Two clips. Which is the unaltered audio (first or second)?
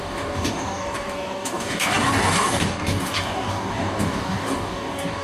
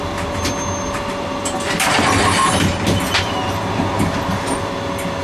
second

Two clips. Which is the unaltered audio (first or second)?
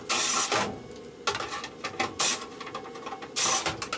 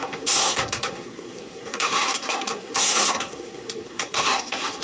first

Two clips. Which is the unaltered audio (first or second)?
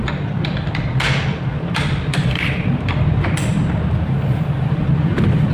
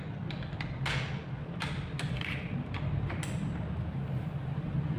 second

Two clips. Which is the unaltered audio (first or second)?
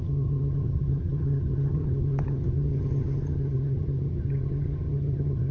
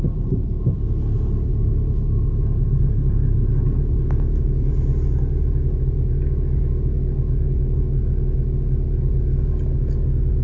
second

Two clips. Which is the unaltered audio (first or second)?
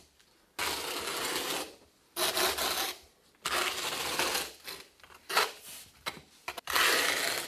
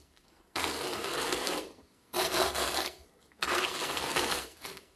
first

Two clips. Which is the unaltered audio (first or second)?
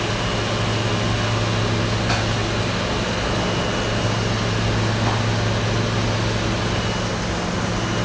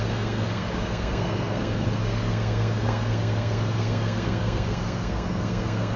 first